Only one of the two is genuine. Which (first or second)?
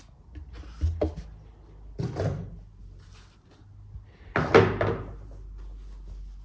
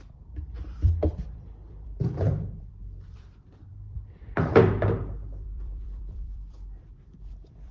first